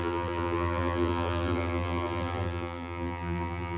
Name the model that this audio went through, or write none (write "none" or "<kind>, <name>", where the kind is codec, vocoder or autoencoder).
vocoder, BigVGAN v2